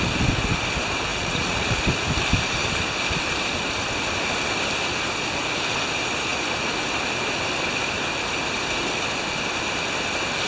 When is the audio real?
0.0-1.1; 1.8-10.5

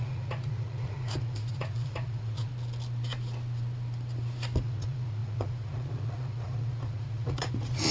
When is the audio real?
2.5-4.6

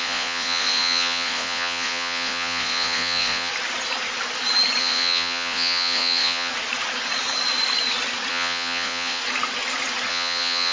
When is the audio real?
3.5-4.8; 6.5-8.3; 9.2-10.1

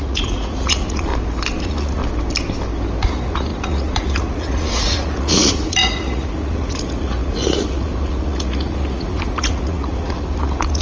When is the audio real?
1.1-1.6; 2.0-3.0

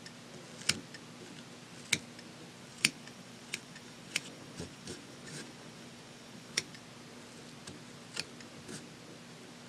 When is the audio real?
0.0-2.7; 6.8-9.7

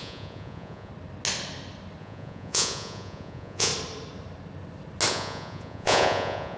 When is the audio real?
0.9-2.0; 3.7-5.1

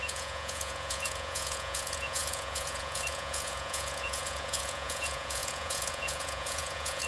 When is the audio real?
none